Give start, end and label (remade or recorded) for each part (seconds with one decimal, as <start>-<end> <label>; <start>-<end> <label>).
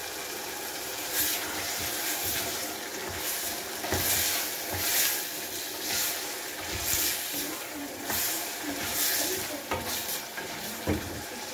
0.0-0.7 recorded; 0.7-3.0 remade; 3.0-7.2 recorded; 7.2-8.9 remade; 8.9-10.2 recorded; 10.2-11.5 remade